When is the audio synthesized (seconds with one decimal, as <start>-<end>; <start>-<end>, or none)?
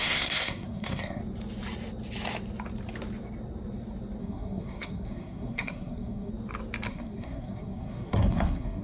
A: 0.0-1.2; 4.2-6.3; 6.9-8.8